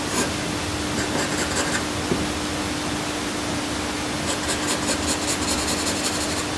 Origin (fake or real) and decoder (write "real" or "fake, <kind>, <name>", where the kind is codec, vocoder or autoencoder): real